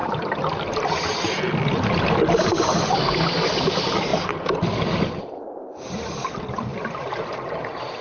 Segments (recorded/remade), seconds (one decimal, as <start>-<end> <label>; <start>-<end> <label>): 0.0-3.0 remade; 3.0-6.7 recorded; 6.7-7.5 remade; 7.5-8.0 recorded